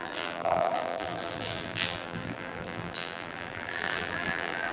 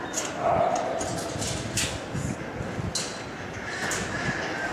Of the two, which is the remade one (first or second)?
first